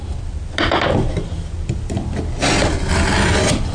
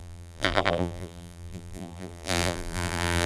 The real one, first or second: first